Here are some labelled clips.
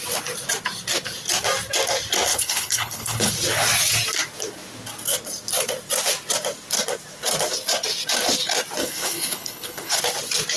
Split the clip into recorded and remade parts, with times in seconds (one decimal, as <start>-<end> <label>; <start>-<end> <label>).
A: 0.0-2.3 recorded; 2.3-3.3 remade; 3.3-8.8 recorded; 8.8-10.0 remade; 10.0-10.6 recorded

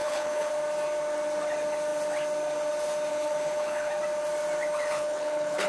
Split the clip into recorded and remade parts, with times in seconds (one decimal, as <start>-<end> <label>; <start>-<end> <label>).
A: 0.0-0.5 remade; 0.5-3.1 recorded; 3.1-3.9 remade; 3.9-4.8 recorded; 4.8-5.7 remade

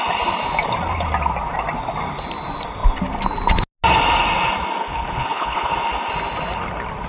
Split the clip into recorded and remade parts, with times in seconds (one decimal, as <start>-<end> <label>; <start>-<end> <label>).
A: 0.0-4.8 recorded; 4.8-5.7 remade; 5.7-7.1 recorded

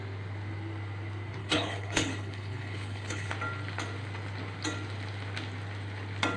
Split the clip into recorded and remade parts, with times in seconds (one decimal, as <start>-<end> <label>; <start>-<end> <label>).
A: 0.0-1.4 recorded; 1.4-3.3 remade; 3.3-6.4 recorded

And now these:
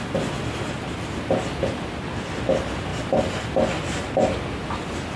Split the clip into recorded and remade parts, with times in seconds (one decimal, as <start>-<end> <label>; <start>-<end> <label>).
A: 0.0-5.2 recorded